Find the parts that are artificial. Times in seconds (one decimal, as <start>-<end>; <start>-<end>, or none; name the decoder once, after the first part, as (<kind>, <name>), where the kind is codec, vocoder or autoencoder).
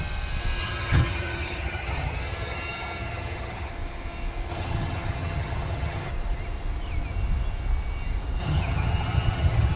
0.6-3.7 (vocoder, HiFi-GAN); 4.5-6.1; 8.4-9.8